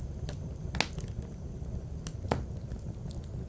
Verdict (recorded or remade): recorded